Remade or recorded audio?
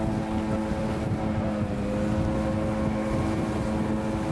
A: recorded